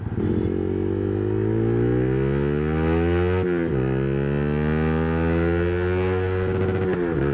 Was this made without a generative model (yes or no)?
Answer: yes